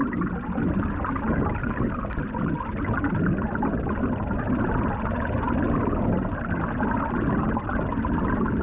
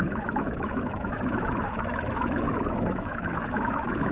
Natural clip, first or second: first